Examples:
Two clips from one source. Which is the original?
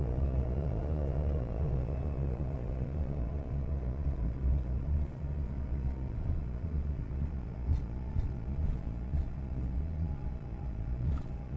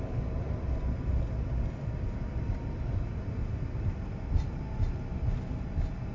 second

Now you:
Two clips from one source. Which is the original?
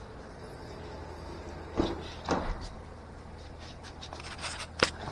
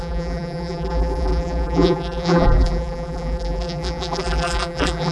first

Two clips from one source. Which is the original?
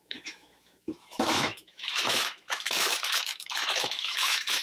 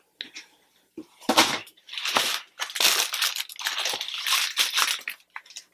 second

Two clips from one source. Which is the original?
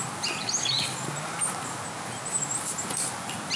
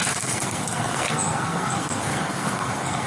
first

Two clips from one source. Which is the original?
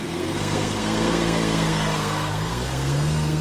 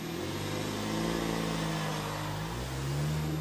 second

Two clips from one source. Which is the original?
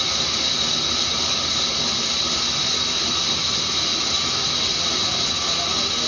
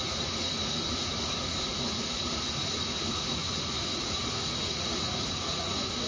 first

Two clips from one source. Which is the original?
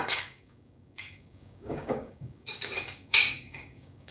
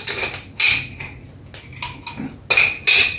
second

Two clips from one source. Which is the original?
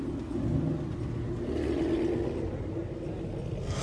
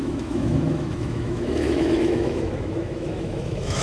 first